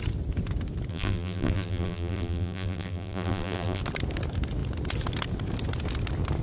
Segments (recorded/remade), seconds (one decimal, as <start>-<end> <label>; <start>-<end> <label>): 0.0-0.9 recorded; 0.9-3.8 remade; 3.8-6.4 recorded